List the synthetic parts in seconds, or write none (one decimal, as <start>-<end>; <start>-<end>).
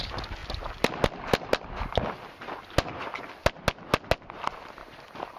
4.8-5.4